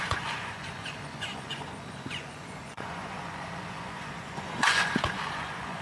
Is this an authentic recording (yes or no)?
no